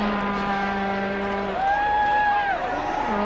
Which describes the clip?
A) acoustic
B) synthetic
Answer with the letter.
B